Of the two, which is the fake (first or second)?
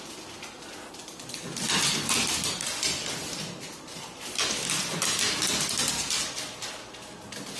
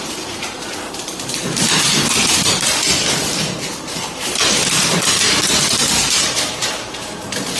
second